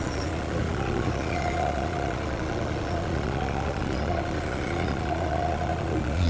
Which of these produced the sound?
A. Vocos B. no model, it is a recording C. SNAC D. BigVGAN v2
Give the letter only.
A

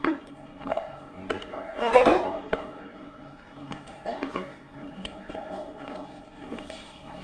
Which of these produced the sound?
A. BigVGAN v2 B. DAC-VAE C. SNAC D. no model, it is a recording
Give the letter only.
C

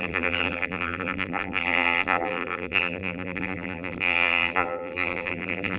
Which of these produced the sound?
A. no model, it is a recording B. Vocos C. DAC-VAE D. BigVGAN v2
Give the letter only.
D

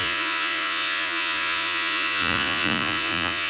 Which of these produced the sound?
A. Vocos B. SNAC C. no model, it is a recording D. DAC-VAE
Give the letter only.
A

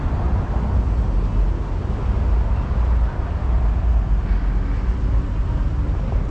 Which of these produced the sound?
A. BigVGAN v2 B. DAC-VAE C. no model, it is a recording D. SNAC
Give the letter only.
C